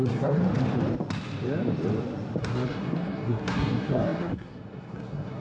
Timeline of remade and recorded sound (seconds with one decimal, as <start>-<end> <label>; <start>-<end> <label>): 0.0-0.4 remade; 0.4-2.4 recorded; 2.4-5.4 remade

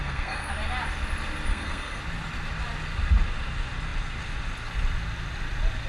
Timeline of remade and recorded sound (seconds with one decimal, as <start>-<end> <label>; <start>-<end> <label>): 0.0-0.5 remade; 0.5-1.5 recorded; 1.5-2.0 remade; 2.0-5.9 recorded

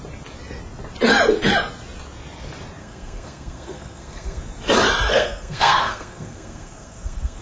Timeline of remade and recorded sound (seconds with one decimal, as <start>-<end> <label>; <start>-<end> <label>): 0.0-2.8 recorded; 2.8-4.4 remade; 4.4-5.1 recorded; 5.1-7.4 remade

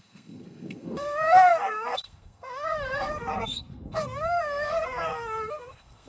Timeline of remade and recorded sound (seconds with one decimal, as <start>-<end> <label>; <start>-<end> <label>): 0.0-6.1 remade

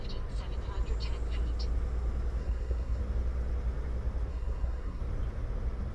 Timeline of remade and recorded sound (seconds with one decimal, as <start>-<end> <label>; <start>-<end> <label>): 0.0-2.4 recorded; 2.4-3.0 remade; 3.0-4.3 recorded; 4.3-5.0 remade; 5.0-5.9 recorded

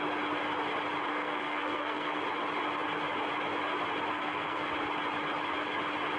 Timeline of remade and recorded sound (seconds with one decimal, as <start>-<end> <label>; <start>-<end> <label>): 0.0-1.1 recorded; 1.1-2.2 remade; 2.2-4.1 recorded; 4.1-4.7 remade; 4.7-6.2 recorded